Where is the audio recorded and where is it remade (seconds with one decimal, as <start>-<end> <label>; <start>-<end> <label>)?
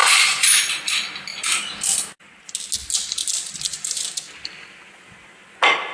0.0-0.6 remade; 0.6-5.9 recorded